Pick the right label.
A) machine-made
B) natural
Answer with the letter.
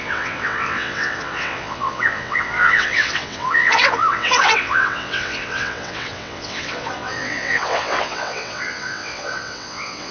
A